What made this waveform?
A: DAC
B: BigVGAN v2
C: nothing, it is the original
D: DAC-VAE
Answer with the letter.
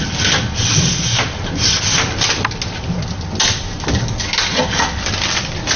C